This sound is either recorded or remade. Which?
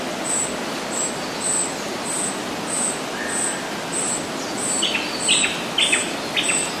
recorded